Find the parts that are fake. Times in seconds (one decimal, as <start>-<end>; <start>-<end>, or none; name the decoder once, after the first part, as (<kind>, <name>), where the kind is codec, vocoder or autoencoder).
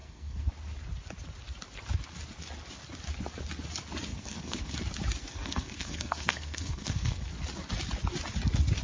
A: 0.0-0.5 (codec, SNAC); 4.1-4.7; 5.2-7.3